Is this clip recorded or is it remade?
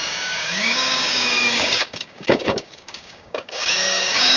remade